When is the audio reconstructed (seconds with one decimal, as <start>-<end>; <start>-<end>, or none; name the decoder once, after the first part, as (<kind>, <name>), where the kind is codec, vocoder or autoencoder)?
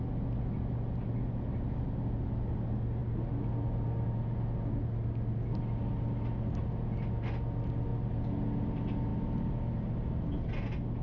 none